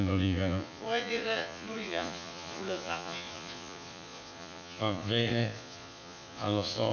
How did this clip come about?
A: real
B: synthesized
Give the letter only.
B